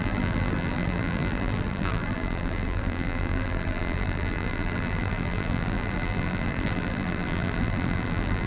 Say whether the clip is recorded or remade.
remade